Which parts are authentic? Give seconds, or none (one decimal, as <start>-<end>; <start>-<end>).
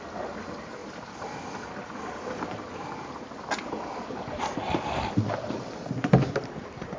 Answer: 0.0-7.0